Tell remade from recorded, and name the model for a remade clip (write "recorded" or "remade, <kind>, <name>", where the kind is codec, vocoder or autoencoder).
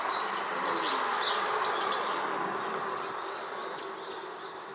recorded